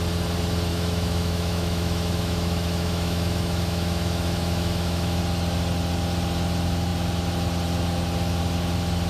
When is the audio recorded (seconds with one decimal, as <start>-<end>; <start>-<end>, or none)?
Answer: 0.0-0.7; 5.2-9.1